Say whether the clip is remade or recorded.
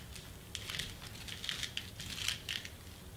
recorded